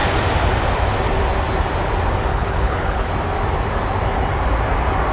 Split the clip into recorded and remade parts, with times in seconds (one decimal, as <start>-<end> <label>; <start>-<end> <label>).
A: 0.0-2.3 recorded; 2.3-3.1 remade; 3.1-5.1 recorded